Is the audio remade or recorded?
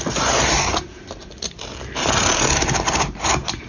recorded